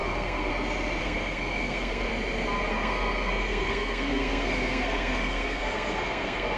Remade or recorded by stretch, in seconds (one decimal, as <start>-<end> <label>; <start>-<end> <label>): 0.0-0.5 remade; 0.5-1.0 recorded; 1.0-2.1 remade; 2.1-2.7 recorded; 2.7-6.6 remade